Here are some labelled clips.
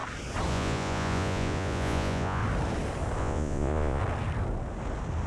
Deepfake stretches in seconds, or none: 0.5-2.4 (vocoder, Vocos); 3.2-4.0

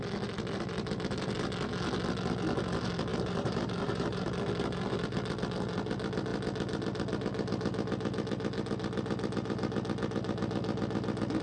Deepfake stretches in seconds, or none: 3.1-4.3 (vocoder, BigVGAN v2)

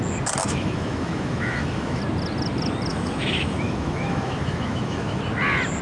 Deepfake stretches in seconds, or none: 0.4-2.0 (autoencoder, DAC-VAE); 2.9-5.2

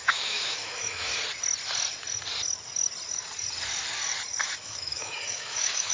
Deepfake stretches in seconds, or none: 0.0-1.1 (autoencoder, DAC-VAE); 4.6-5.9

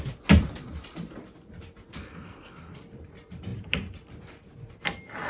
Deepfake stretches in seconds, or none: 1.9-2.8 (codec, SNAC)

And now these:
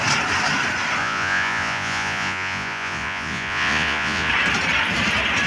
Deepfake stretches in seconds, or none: 1.0-4.3 (vocoder, Vocos)